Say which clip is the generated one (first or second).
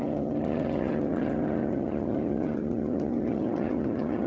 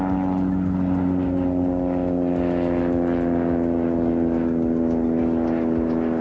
first